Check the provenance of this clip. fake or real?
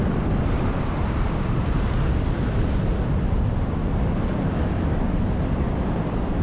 fake